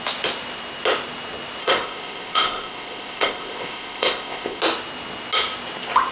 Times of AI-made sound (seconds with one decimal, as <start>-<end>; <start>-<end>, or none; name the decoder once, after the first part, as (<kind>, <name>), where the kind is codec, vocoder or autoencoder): 1.6-4.6 (codec, ZipCodec)